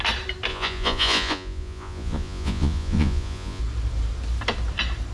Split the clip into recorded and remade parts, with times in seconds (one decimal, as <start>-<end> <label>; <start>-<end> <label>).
0.0-0.5 recorded; 0.5-3.6 remade; 3.6-5.1 recorded